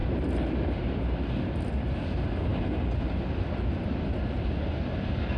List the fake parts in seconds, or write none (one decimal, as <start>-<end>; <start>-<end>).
none